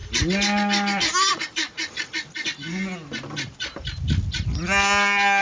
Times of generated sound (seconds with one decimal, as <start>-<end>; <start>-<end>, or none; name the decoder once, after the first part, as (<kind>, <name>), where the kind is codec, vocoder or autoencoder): none